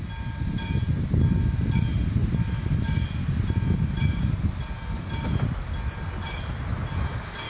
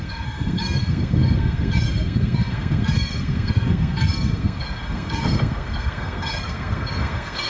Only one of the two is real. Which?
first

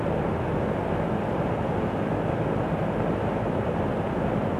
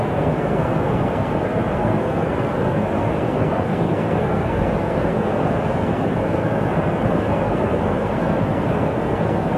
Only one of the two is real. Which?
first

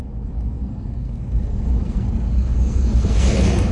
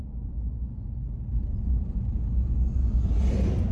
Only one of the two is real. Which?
second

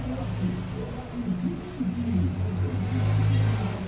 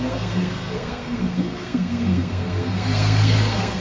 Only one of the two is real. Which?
first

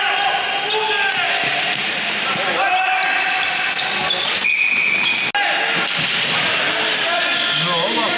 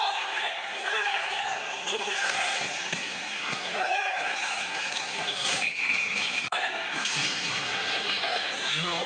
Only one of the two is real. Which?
first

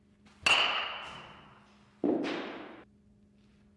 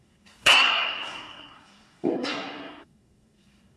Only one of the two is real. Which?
first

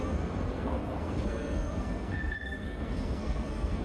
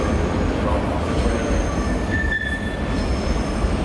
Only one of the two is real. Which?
second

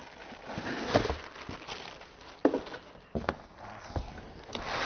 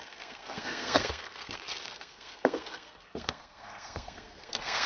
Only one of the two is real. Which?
first